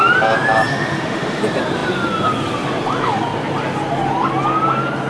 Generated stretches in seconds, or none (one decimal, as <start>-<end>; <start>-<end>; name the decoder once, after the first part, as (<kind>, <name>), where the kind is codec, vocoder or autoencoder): 0.7-1.4 (autoencoder, DAC-VAE)